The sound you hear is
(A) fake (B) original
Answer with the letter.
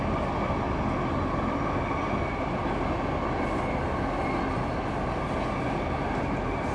B